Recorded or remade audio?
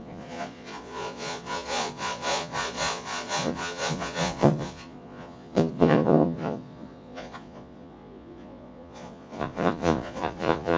remade